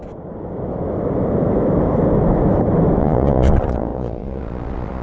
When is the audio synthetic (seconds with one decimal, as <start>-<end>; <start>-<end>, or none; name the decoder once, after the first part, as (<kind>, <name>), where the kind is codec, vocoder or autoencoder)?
3.0-5.0 (vocoder, Vocos)